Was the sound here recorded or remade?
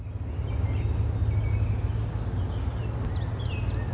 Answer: recorded